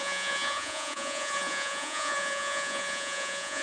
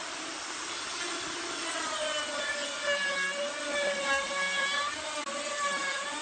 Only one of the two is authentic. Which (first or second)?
second